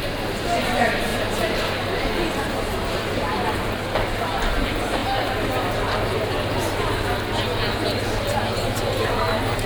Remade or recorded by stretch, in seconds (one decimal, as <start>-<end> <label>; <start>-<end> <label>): 0.0-1.1 recorded; 1.1-3.7 remade; 3.7-9.7 recorded